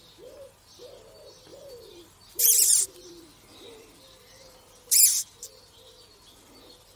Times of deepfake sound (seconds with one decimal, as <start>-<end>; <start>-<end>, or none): 1.5-5.0; 6.3-7.0